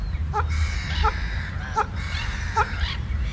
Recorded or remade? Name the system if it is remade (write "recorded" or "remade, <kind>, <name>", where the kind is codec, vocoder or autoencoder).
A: remade, vocoder, BigVGAN v2